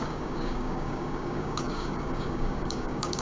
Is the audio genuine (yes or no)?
no